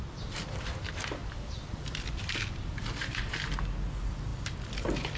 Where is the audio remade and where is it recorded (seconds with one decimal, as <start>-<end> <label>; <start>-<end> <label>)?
0.0-1.2 recorded; 1.2-3.2 remade; 3.2-4.3 recorded; 4.3-5.2 remade